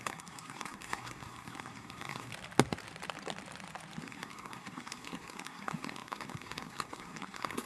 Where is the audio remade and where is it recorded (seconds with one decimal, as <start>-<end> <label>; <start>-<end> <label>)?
0.0-2.3 remade; 2.3-4.0 recorded; 4.0-7.7 remade